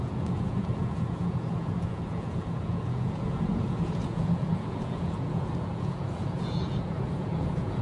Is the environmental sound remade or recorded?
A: remade